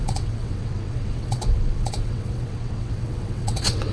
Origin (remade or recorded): remade